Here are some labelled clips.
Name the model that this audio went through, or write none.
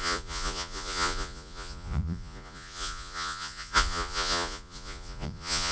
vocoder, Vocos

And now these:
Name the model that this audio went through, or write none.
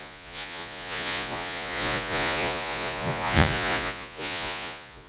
vocoder, Vocos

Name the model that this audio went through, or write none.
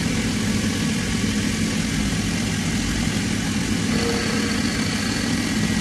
none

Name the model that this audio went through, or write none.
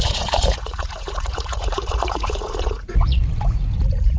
vocoder, Vocos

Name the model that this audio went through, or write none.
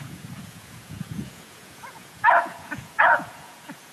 vocoder, Vocos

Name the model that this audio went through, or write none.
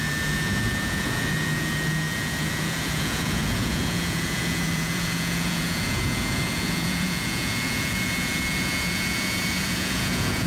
vocoder, Vocos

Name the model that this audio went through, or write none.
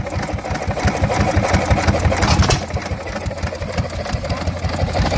none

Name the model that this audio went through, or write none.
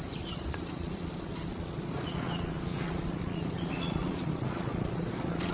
vocoder, Vocos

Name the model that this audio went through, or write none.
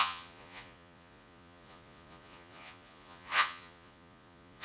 vocoder, Vocos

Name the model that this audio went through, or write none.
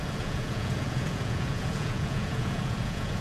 vocoder, Vocos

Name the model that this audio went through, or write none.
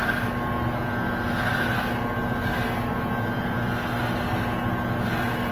none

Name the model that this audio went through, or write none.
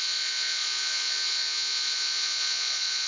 vocoder, Vocos